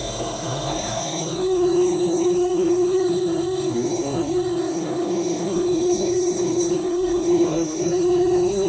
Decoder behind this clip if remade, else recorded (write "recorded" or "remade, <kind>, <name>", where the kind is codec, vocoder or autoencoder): remade, codec, SNAC